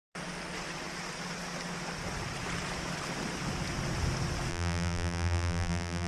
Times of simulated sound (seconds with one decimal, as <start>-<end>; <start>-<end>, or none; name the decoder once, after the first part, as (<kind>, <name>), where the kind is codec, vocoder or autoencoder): 4.5-6.1 (vocoder, BigVGAN v2)